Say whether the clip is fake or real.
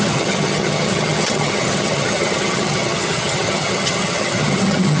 fake